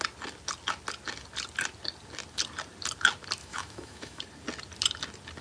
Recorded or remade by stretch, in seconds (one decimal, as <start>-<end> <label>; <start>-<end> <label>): 0.0-3.4 recorded; 3.4-4.2 remade; 4.2-5.4 recorded